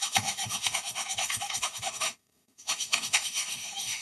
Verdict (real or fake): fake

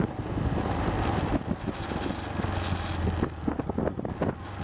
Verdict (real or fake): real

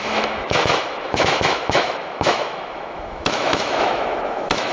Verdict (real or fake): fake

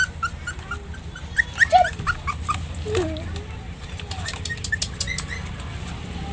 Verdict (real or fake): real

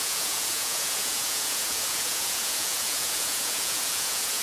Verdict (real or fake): fake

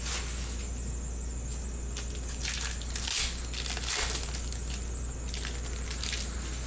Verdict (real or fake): real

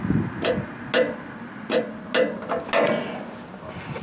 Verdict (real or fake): real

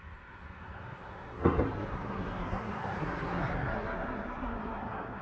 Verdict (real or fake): fake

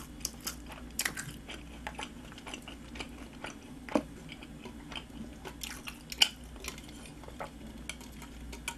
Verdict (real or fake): real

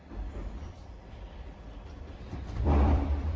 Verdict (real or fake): fake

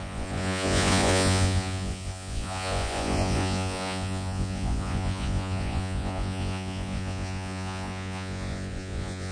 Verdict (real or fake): fake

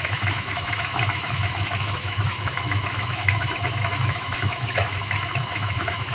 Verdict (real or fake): fake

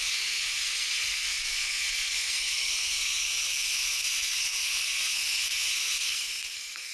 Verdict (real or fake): fake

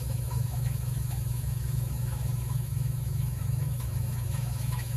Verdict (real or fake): fake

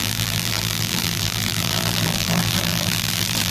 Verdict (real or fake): fake